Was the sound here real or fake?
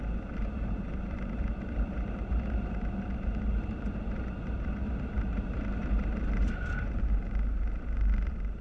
fake